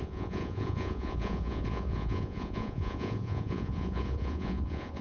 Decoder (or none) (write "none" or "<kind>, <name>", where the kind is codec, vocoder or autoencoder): vocoder, Vocos